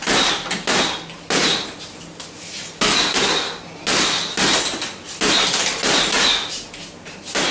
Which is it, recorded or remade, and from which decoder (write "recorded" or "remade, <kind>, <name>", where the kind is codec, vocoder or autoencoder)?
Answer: recorded